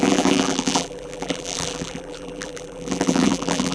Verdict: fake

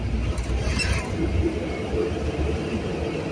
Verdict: real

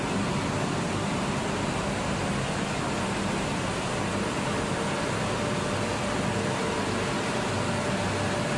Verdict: real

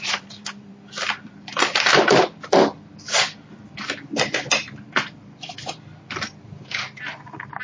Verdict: fake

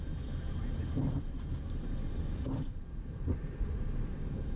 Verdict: fake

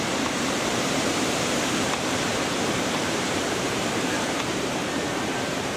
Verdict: fake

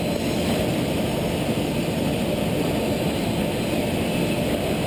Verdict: real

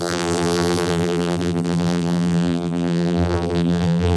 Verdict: fake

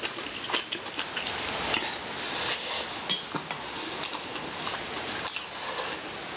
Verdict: real